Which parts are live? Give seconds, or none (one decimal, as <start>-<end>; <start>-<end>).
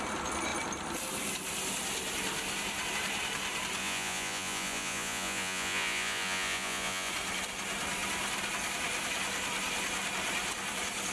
0.0-3.8; 7.1-11.1